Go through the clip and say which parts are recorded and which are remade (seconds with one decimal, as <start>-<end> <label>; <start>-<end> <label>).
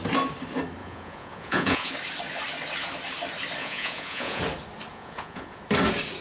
0.0-0.8 recorded; 0.8-1.9 remade; 1.9-3.6 recorded; 3.6-4.4 remade; 4.4-4.9 recorded; 4.9-5.6 remade; 5.6-6.2 recorded